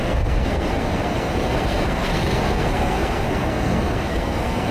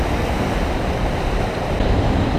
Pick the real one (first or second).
second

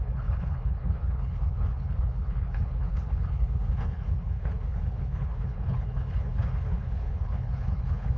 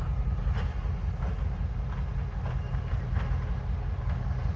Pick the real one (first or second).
second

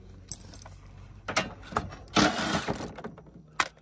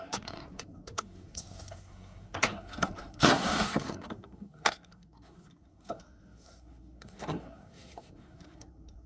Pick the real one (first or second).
first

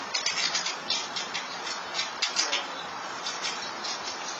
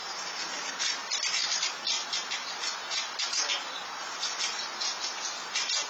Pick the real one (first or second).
second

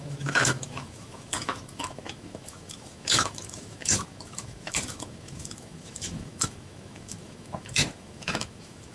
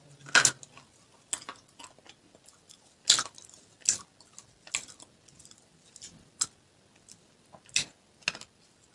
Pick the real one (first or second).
second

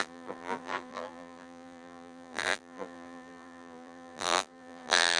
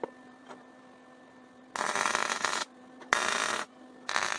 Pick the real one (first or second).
second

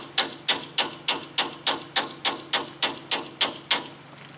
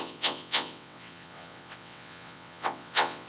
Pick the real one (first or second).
first